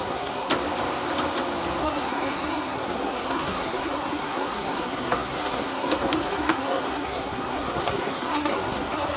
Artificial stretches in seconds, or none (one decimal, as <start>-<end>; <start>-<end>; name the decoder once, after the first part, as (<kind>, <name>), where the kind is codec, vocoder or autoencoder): 0.0-0.5 (codec, SNAC); 1.8-9.2